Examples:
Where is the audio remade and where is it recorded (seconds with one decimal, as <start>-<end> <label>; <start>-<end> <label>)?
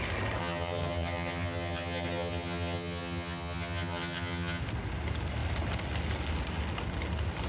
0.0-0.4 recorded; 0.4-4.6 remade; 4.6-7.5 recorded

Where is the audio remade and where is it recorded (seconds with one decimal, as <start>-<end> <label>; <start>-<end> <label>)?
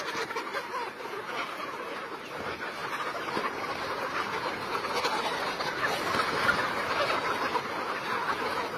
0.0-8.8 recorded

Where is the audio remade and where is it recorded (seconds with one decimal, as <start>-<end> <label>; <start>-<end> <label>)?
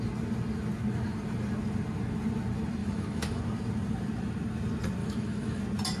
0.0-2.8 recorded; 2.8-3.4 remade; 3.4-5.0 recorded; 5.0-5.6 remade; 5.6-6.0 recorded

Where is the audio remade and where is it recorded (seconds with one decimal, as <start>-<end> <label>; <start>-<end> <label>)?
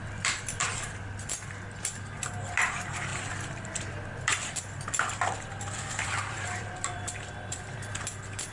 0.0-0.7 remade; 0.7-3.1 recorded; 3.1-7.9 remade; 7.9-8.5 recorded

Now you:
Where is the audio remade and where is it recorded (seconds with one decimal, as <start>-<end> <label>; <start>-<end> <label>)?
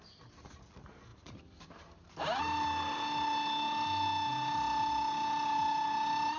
0.0-6.4 recorded